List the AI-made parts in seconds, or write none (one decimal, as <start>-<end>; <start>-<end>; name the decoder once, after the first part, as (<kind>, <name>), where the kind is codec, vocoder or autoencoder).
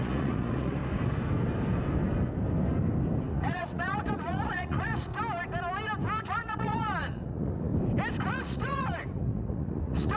0.0-0.8 (vocoder, Vocos); 3.3-5.1; 6.2-7.7; 8.2-10.2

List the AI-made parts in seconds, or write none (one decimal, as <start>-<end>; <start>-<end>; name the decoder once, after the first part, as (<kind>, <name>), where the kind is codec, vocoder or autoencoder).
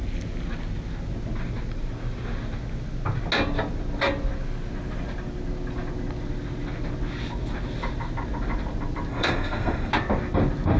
9.1-9.9 (codec, SNAC)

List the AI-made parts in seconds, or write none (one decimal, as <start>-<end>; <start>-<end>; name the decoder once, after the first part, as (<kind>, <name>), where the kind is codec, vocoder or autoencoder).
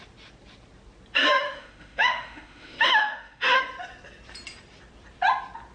1.2-3.6 (autoencoder, DAC-VAE)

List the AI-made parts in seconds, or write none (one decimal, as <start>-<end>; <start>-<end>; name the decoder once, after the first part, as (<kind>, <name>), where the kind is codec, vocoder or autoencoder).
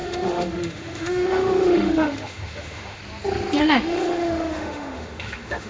0.0-3.0 (autoencoder, DAC-VAE); 3.6-5.7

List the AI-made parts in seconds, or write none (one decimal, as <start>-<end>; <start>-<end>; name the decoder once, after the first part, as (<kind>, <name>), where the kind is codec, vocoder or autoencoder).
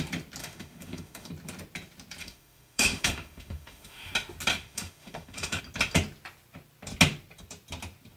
0.4-1.3 (autoencoder, DAC-VAE); 2.2-4.1; 4.5-5.6